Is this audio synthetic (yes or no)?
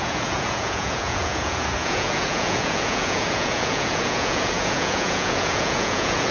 yes